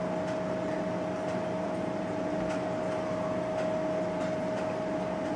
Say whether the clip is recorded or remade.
recorded